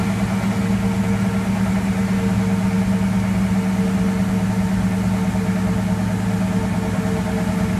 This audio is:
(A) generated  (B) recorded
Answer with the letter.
B